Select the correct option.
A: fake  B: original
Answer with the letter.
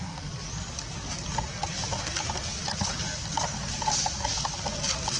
B